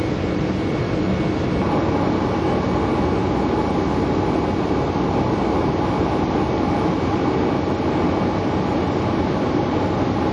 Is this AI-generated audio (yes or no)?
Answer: no